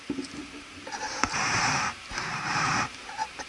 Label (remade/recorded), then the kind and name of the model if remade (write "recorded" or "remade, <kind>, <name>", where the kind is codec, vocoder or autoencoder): remade, vocoder, BigVGAN v2